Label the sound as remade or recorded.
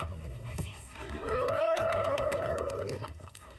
remade